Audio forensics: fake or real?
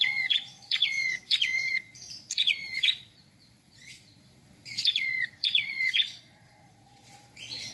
fake